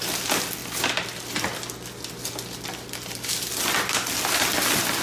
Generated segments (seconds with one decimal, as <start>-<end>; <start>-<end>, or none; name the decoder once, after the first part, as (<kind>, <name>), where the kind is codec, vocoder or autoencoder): none